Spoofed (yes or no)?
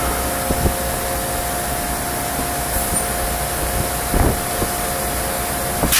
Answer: no